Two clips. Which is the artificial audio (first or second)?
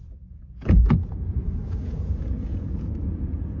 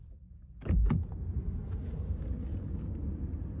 first